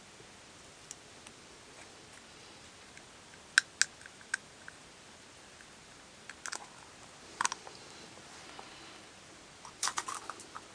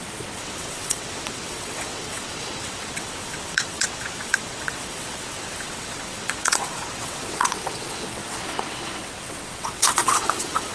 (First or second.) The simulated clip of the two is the second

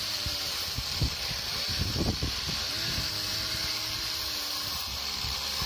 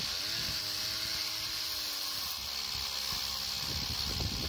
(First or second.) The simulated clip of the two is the first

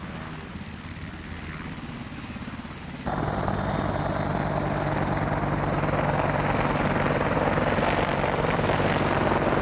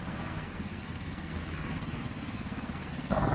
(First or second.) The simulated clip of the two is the second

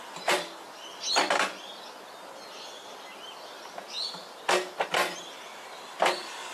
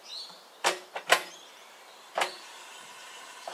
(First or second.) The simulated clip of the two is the second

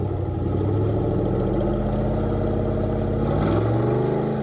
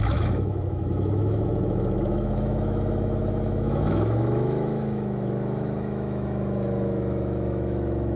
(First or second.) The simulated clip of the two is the second